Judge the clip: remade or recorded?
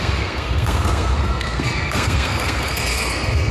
remade